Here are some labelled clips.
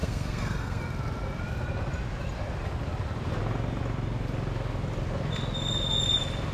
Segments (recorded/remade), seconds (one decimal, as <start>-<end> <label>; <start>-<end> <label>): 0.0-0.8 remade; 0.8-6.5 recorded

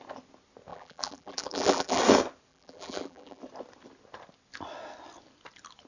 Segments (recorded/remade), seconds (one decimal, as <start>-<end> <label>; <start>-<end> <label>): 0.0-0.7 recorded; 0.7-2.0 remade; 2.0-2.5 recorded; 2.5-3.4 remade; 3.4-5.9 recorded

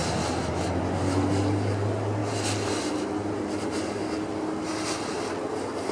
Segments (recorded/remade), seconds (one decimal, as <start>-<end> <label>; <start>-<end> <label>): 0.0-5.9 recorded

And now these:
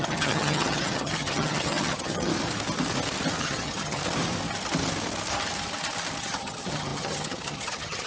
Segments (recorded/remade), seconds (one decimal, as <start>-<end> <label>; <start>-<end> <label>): 0.0-2.3 remade; 2.3-3.4 recorded; 3.4-4.0 remade; 4.0-6.2 recorded; 6.2-8.1 remade

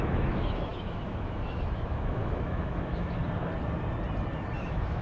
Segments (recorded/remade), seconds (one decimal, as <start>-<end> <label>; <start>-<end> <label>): 0.0-3.2 remade; 3.2-4.6 recorded; 4.6-5.0 remade

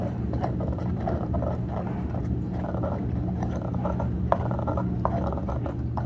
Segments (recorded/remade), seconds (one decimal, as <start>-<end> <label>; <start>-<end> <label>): 0.0-6.1 recorded

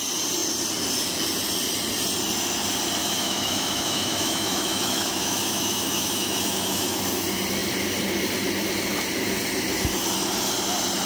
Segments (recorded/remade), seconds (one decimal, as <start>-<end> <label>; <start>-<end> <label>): 0.0-3.0 recorded; 3.0-7.0 remade; 7.0-11.1 recorded